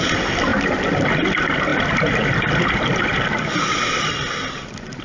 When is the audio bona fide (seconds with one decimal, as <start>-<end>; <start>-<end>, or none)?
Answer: 0.0-5.0